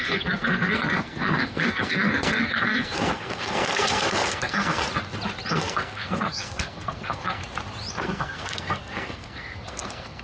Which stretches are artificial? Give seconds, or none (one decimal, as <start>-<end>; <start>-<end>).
0.0-4.8; 5.5-7.4; 7.9-10.2